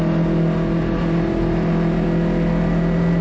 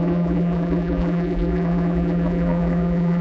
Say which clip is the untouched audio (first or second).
first